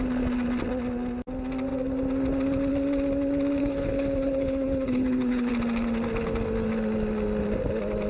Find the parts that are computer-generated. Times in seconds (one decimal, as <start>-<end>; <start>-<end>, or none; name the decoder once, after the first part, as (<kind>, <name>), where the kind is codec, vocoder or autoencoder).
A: 3.6-5.5 (codec, HILCodec)